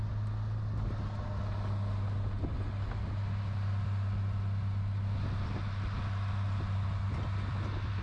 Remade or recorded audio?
recorded